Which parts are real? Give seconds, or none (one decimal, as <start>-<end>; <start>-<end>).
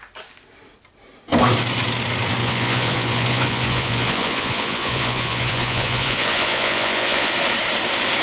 0.0-2.4; 7.3-8.2